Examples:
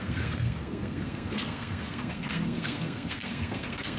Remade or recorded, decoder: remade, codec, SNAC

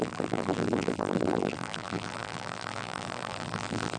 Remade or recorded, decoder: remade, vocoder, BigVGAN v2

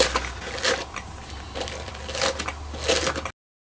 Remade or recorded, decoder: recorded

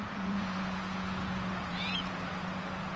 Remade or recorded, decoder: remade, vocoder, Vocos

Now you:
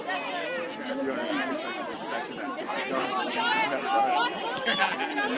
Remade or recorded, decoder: recorded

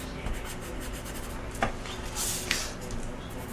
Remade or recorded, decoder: recorded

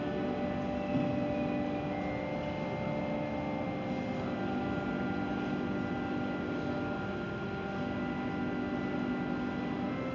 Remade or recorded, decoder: recorded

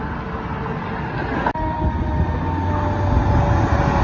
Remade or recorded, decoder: recorded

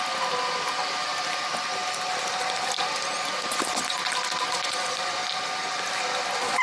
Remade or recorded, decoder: recorded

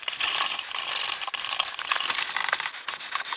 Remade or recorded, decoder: recorded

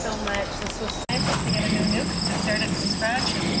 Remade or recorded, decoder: recorded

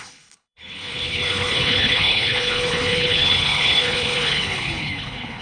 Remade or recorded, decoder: remade, codec, HILCodec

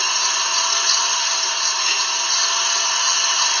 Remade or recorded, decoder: recorded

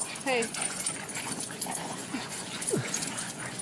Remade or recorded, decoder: remade, vocoder, Vocos